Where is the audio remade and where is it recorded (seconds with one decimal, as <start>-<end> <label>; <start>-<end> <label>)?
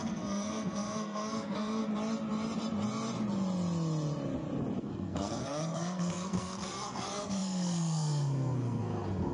0.0-1.8 remade; 1.8-4.8 recorded; 4.8-9.3 remade